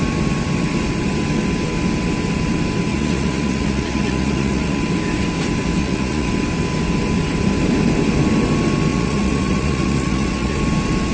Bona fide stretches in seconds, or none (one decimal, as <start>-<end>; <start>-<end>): 0.0-2.9; 4.8-5.8; 6.3-8.9; 10.6-11.1